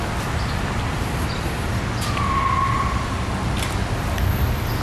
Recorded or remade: recorded